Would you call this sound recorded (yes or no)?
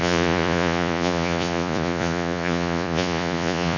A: no